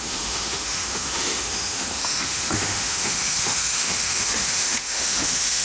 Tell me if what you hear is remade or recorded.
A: remade